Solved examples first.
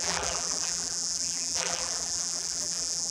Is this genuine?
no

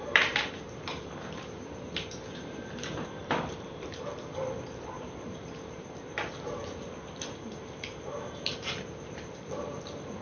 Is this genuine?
no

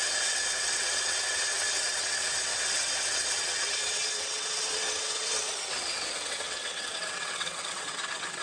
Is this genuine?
no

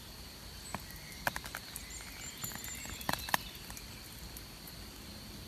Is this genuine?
yes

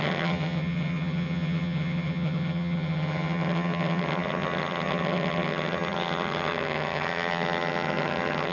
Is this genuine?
no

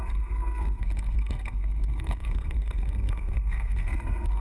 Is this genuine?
no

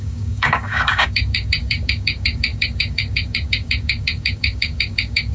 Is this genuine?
no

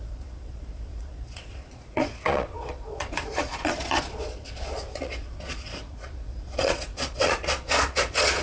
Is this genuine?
no